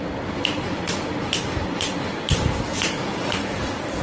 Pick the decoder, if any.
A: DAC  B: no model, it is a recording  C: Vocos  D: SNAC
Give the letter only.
B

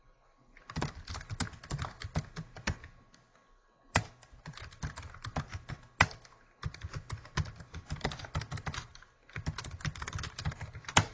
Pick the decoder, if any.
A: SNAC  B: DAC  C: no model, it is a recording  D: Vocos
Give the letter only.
C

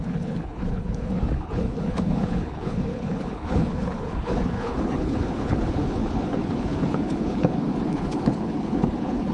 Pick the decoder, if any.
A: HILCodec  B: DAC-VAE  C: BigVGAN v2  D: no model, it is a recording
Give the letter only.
A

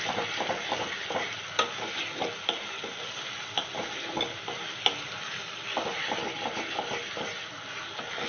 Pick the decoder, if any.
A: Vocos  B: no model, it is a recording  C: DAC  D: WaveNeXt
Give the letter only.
B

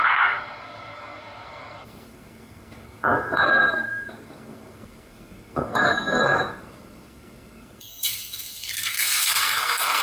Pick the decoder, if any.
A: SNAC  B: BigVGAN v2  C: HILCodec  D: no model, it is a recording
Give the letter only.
A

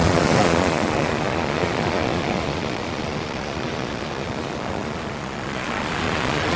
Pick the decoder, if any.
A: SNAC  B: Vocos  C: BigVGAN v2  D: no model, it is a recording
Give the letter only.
B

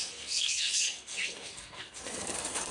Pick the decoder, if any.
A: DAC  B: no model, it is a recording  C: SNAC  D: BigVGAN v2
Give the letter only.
C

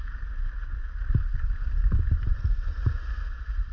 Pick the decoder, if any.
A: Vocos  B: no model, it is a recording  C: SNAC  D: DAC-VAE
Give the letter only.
B